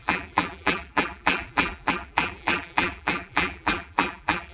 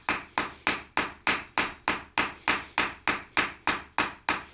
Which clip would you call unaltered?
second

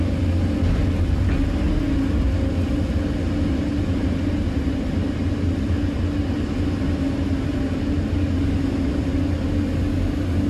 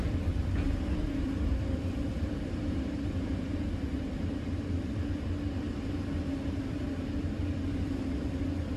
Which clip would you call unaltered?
first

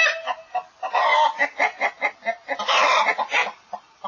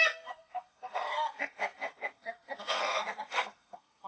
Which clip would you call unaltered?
first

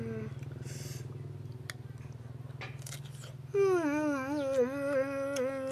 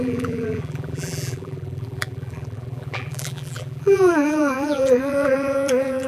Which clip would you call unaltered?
first